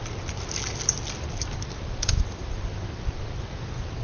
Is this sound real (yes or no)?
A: yes